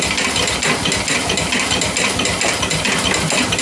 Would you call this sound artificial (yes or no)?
no